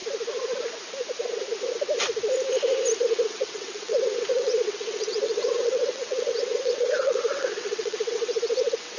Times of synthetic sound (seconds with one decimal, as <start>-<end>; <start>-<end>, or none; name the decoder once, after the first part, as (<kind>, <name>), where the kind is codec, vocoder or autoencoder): 3.0-9.0 (vocoder, WaveNeXt)

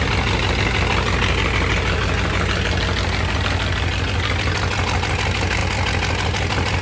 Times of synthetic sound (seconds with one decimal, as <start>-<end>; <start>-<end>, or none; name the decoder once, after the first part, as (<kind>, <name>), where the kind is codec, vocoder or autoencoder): none

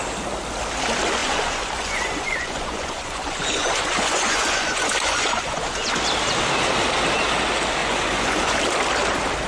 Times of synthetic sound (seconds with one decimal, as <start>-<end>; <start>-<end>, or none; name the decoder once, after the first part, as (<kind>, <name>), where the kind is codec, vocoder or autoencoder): 1.2-6.0 (vocoder, Vocos); 7.8-8.6

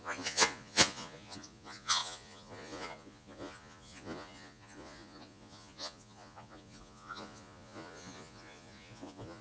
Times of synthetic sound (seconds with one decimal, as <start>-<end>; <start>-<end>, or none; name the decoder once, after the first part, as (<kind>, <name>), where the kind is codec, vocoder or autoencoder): 0.0-9.4 (vocoder, Vocos)